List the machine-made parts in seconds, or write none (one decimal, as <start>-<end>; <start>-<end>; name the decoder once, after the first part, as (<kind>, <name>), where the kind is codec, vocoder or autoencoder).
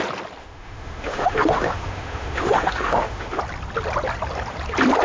0.4-3.4 (autoencoder, DAC-VAE)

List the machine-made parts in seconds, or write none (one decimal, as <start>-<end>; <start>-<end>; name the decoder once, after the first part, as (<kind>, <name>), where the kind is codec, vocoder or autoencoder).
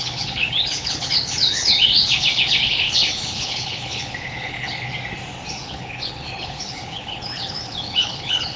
0.0-4.9 (codec, HILCodec); 5.5-8.6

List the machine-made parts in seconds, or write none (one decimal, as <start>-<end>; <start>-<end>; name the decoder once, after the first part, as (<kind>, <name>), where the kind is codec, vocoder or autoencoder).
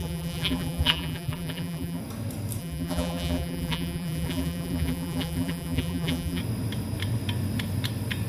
0.0-2.0 (vocoder, BigVGAN v2); 2.6-6.4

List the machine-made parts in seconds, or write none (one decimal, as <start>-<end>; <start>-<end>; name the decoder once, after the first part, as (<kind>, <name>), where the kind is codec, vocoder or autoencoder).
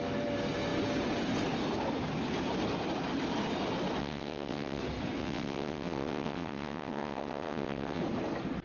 4.0-4.8 (vocoder, WaveNeXt); 5.2-8.0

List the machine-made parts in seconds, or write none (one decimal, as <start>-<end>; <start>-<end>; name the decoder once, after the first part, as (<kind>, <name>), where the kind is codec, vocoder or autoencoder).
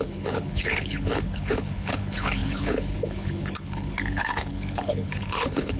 0.0-5.8 (codec, HILCodec)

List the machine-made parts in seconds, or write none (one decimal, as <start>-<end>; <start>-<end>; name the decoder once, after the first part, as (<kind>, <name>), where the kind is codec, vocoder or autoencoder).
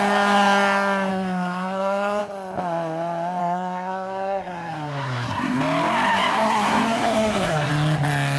1.1-2.2 (codec, SNAC); 3.4-5.6; 6.3-7.7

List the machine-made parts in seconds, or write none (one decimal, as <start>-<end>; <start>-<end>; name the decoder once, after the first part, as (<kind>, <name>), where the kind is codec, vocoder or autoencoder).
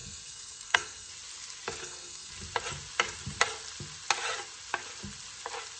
0.0-1.1 (codec, SNAC); 1.8-2.3